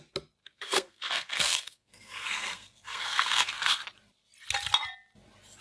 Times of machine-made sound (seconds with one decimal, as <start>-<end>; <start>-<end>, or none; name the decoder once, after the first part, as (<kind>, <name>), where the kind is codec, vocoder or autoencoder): 0.4-3.8 (codec, SNAC)